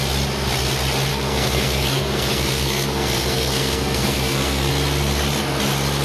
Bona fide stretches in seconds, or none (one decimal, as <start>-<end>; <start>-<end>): 0.0-1.1; 4.7-6.0